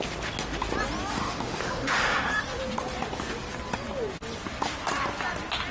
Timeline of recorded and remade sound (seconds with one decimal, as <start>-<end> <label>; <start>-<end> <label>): 0.0-1.1 recorded; 1.1-2.3 remade; 2.3-5.7 recorded